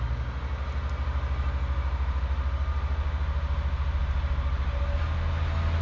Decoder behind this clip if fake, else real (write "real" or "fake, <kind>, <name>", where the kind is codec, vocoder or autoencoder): real